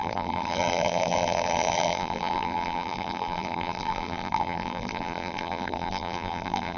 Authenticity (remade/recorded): remade